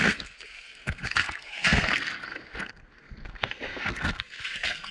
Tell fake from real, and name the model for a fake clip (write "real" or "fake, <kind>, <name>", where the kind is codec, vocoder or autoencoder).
fake, codec, SNAC